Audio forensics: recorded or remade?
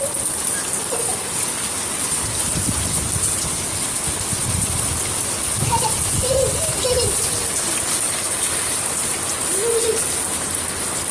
remade